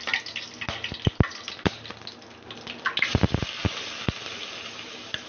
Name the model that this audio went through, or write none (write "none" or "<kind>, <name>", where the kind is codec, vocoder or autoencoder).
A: none